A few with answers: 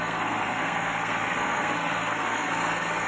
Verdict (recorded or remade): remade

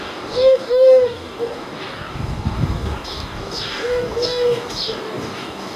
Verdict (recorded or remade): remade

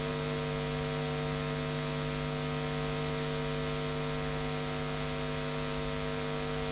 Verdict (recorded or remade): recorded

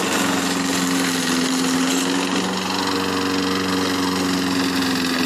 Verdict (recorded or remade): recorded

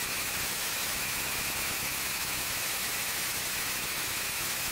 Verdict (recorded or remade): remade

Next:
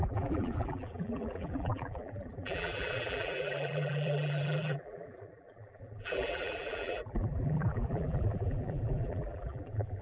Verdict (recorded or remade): remade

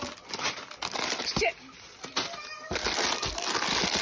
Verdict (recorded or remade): recorded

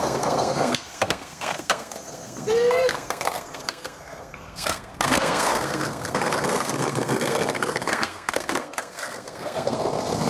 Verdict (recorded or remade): remade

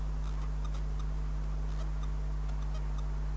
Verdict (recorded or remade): recorded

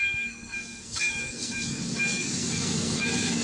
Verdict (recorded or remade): remade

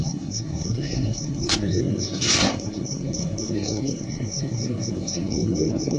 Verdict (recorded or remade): remade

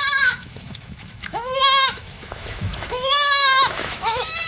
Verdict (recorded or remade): remade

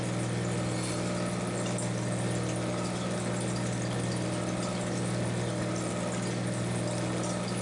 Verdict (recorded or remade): recorded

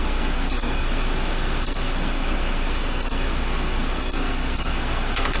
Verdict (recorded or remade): remade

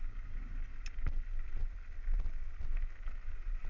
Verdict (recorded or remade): recorded